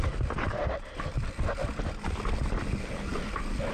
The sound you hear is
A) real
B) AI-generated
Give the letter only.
A